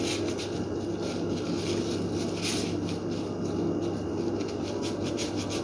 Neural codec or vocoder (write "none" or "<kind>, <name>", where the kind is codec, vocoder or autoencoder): none